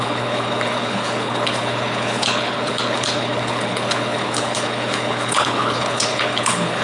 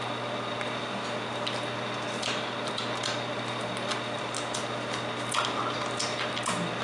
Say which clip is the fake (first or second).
first